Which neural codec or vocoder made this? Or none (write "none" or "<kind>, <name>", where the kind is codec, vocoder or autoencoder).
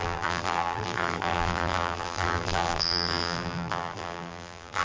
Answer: vocoder, BigVGAN v2